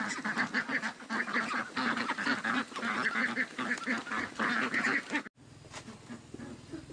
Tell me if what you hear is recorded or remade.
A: recorded